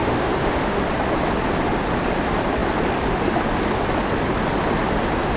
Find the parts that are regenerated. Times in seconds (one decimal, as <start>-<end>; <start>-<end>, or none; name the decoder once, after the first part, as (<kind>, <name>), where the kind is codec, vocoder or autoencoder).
0.0-0.8 (autoencoder, DAC-VAE)